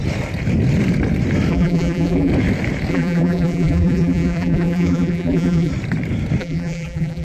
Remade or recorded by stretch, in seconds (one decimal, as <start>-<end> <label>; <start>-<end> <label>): 0.0-1.5 recorded; 1.5-2.3 remade; 2.3-2.9 recorded; 2.9-5.7 remade; 5.7-6.4 recorded; 6.4-7.2 remade